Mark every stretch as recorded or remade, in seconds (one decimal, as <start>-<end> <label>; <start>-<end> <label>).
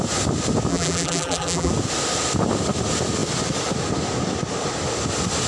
0.0-0.7 recorded; 0.7-1.7 remade; 1.7-5.5 recorded